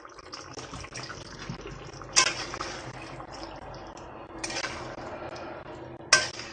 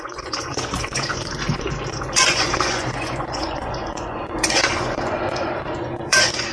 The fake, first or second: second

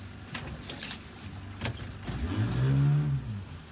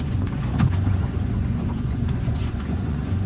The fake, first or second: second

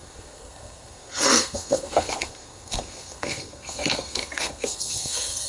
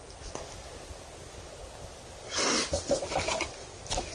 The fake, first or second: first